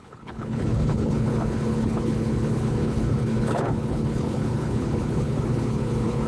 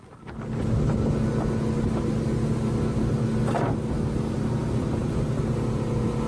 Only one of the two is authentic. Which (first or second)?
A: second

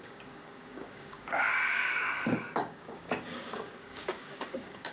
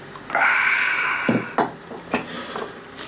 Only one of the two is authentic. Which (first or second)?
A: second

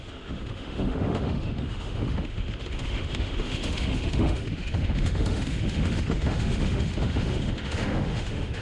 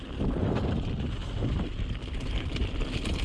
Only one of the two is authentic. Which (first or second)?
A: second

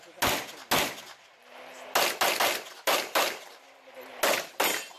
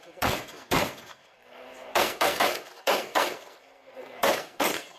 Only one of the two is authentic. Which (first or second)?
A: first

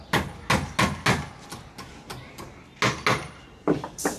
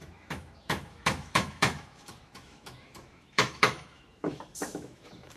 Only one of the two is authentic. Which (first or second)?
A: first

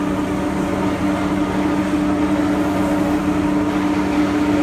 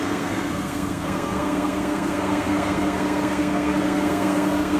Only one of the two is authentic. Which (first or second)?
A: first